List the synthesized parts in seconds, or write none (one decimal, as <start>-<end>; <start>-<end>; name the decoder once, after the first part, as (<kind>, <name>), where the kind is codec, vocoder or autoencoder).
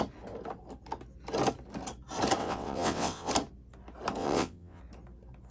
2.4-3.3 (vocoder, WaveNeXt); 4.2-4.8